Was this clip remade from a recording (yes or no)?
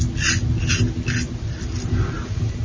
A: no